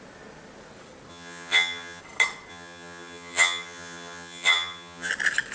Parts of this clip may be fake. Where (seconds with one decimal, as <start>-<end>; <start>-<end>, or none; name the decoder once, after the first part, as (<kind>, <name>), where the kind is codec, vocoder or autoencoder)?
1.1-2.0 (vocoder, HiFi-GAN); 2.5-5.1